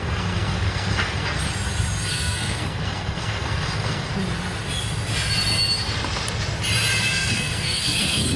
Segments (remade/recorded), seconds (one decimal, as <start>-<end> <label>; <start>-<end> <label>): 0.0-1.4 remade; 1.4-2.1 recorded; 2.1-4.1 remade; 4.1-7.0 recorded; 7.0-8.4 remade